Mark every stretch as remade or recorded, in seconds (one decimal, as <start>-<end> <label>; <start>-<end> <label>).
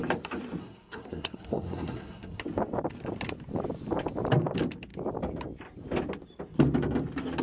0.0-0.6 recorded; 0.6-2.4 remade; 2.4-7.4 recorded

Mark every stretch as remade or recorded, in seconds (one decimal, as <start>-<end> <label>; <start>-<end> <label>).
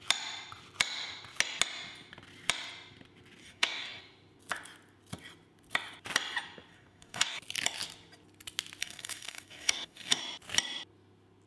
0.0-3.4 recorded; 3.4-4.0 remade; 4.0-6.7 recorded; 6.7-7.4 remade; 7.4-8.8 recorded; 8.8-10.2 remade; 10.2-11.5 recorded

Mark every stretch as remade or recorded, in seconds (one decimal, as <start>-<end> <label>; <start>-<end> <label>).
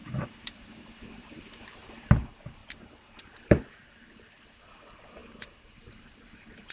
0.0-2.1 remade; 2.1-2.6 recorded; 2.6-3.6 remade; 3.6-5.2 recorded; 5.2-6.2 remade; 6.2-6.7 recorded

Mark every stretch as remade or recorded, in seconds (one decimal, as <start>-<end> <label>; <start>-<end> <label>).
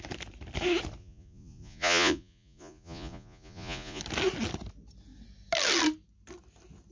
0.0-1.0 recorded; 1.0-4.0 remade; 4.0-6.9 recorded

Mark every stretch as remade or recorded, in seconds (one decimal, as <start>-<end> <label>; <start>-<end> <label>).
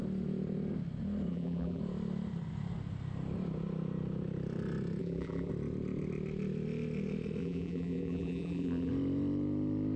0.0-1.3 recorded; 1.3-1.8 remade; 1.8-5.0 recorded; 5.0-5.5 remade; 5.5-7.4 recorded; 7.4-8.9 remade; 8.9-10.0 recorded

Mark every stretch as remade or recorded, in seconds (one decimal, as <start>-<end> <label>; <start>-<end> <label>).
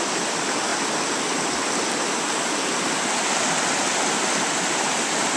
0.0-5.4 recorded